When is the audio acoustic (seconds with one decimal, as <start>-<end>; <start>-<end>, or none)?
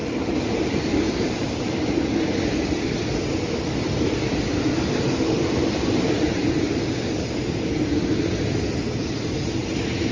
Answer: 0.0-10.1